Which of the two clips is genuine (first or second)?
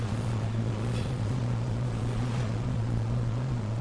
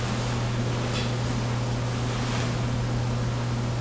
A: second